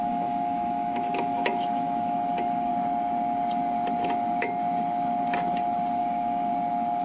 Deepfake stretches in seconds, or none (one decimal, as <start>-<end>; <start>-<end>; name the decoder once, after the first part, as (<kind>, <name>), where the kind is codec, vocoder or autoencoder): 0.0-2.7 (autoencoder, DAC-VAE); 6.0-6.5